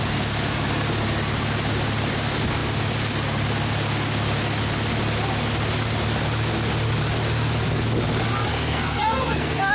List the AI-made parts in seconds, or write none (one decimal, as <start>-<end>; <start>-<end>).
8.5-9.7